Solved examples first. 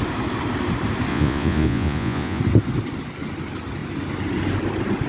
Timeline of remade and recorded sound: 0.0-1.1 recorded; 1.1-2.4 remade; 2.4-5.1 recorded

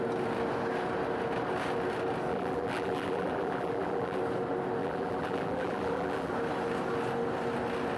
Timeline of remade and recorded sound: 0.0-2.3 recorded; 2.3-4.2 remade; 4.2-4.8 recorded; 4.8-6.3 remade; 6.3-8.0 recorded

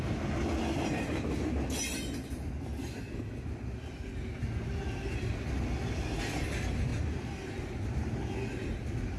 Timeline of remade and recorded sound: 0.0-9.2 recorded

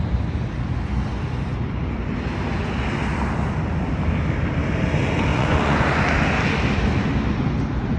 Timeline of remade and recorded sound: 0.0-5.3 recorded; 5.3-6.0 remade; 6.0-8.0 recorded

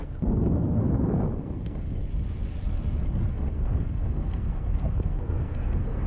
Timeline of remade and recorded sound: 0.0-2.1 remade; 2.1-3.3 recorded; 3.3-6.1 remade

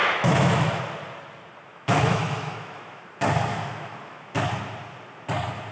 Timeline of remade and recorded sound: 0.0-0.8 remade; 0.8-1.7 recorded; 1.7-3.0 remade; 3.0-3.5 recorded; 3.5-4.5 remade; 4.5-5.7 recorded